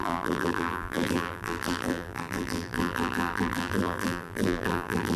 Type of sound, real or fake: fake